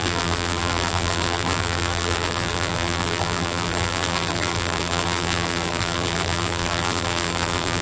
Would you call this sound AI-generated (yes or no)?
yes